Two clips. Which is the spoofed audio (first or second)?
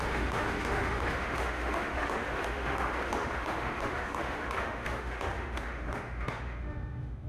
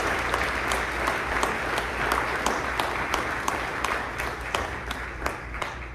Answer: first